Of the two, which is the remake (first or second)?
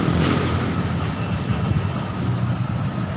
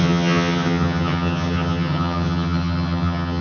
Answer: second